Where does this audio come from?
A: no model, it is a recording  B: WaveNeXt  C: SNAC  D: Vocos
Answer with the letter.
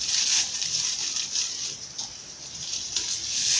A